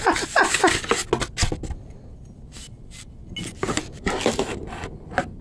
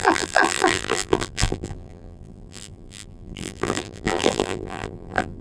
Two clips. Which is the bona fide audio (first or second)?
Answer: first